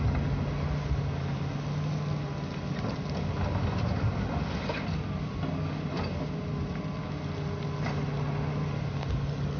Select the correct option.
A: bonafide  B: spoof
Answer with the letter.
A